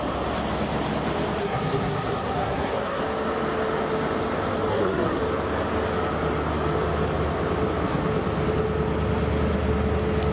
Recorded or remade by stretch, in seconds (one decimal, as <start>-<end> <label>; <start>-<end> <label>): 0.0-1.4 recorded; 1.4-3.0 remade; 3.0-4.7 recorded; 4.7-5.2 remade; 5.2-10.3 recorded